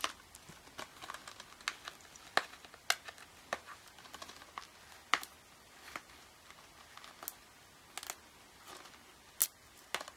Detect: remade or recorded recorded